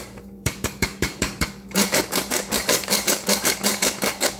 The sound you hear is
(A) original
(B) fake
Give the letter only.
B